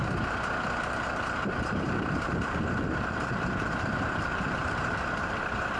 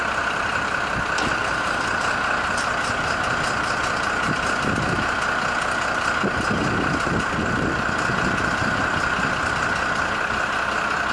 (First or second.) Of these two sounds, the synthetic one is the first